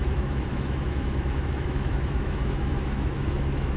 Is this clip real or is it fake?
fake